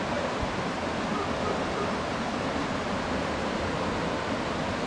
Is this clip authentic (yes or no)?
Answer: yes